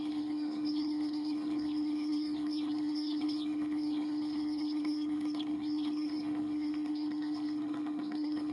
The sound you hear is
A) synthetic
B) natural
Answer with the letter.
A